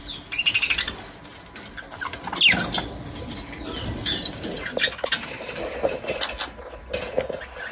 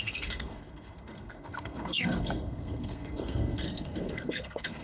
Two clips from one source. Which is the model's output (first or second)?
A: second